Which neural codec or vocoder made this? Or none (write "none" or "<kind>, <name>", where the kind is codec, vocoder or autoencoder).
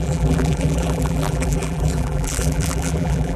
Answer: vocoder, BigVGAN v2